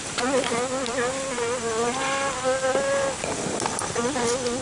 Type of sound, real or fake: real